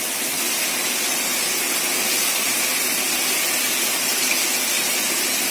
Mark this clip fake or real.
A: real